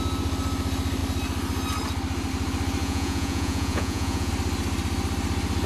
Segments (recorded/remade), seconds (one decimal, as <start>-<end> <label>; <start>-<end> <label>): 0.0-2.8 recorded; 2.8-4.3 remade; 4.3-5.7 recorded